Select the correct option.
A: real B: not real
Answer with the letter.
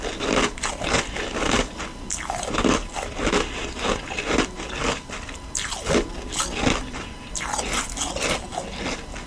A